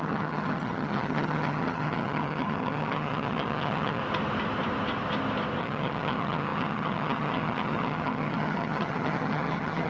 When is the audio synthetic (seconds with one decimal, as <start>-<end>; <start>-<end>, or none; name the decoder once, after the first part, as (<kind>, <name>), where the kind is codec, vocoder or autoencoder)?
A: 0.0-4.0 (vocoder, HiFi-GAN); 5.6-9.9